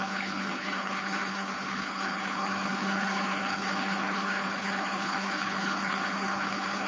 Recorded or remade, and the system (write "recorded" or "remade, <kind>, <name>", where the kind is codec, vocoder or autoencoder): remade, codec, HILCodec